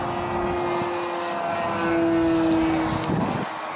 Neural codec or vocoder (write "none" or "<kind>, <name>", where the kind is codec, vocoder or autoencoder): none